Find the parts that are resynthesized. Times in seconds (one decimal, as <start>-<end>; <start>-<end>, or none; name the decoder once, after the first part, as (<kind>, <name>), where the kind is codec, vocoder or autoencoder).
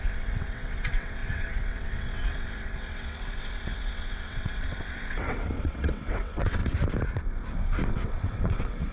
0.0-6.6 (vocoder, WaveNeXt); 7.9-8.9